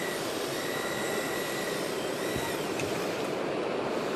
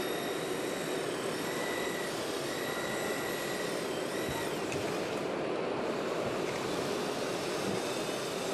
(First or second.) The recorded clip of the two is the second